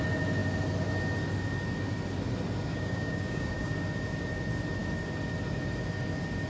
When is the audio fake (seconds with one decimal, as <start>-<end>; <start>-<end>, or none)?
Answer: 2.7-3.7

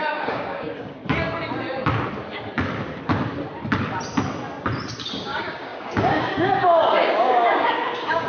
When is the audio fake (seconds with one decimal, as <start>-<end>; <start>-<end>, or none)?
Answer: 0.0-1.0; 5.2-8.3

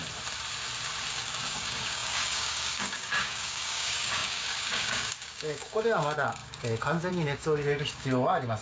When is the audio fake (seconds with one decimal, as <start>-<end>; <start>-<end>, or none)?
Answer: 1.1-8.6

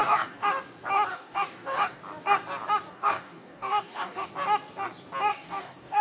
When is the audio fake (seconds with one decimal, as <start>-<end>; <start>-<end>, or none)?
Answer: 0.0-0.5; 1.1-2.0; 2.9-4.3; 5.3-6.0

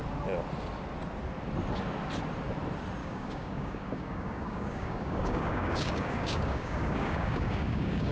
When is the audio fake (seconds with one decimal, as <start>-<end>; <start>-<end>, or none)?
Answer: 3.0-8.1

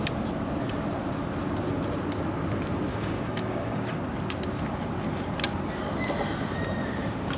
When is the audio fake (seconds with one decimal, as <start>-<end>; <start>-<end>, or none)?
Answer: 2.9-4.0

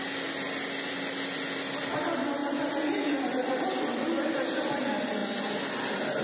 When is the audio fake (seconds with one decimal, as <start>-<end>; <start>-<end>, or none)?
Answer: none